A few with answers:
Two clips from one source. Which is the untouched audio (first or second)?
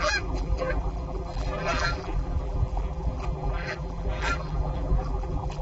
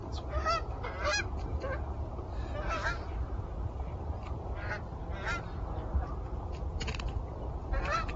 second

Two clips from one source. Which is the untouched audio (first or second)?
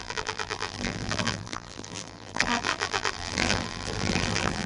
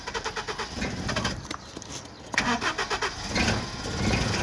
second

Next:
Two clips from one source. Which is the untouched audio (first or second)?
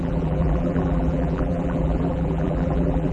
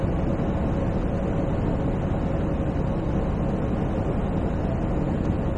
second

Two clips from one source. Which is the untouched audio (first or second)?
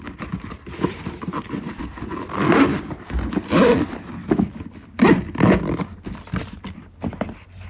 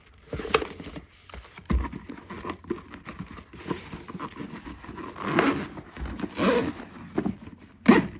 second